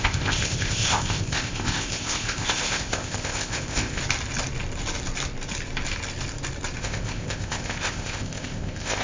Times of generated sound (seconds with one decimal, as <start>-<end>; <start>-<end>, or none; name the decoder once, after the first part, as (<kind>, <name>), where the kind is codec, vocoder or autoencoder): 0.0-4.0 (codec, ZipCodec); 6.8-9.0